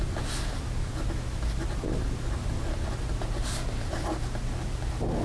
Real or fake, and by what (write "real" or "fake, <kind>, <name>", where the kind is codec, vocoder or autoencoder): real